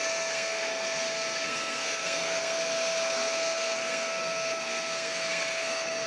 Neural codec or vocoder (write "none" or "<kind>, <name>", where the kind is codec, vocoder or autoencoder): codec, SNAC